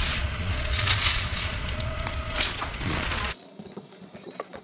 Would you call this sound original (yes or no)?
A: no